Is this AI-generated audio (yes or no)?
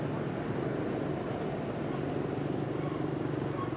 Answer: no